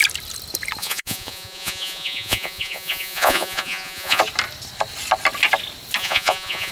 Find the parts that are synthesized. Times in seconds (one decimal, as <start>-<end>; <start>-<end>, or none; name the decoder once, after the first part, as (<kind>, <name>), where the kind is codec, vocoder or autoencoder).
0.8-4.2 (vocoder, Vocos); 6.0-6.7